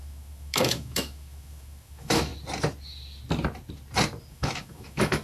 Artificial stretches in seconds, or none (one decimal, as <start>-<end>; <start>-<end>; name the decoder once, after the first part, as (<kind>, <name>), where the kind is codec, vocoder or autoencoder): 0.0-2.3 (autoencoder, DAC-VAE); 4.3-5.2